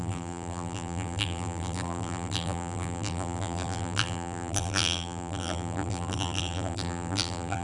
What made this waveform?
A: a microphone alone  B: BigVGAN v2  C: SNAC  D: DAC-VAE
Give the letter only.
B